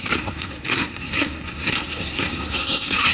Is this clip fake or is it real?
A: fake